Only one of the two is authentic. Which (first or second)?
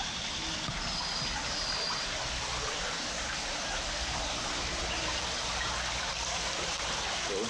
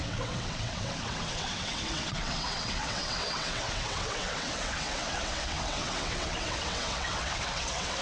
first